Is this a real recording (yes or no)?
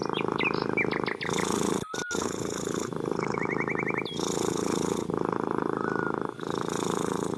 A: yes